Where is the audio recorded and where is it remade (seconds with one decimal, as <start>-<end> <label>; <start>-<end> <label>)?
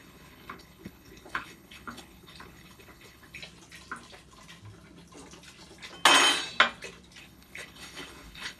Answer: 0.0-3.4 remade; 3.4-7.2 recorded; 7.2-8.6 remade